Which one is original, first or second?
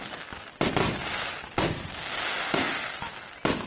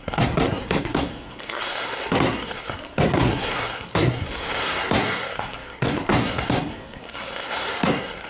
first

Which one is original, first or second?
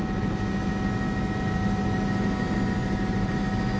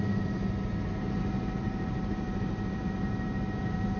first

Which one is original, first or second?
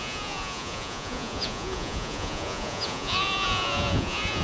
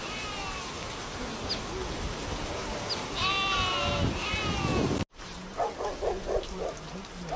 second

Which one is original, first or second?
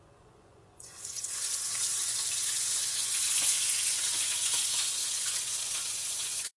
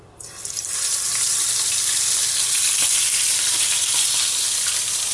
second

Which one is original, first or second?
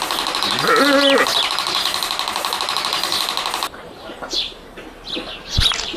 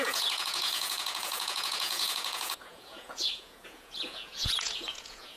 first